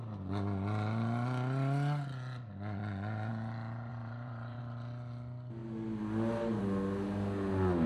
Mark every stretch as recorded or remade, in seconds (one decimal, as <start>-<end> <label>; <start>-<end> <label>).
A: 0.0-3.9 recorded; 3.9-4.6 remade; 4.6-7.9 recorded